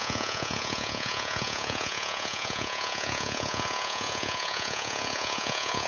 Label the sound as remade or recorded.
remade